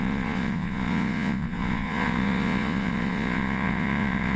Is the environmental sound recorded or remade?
remade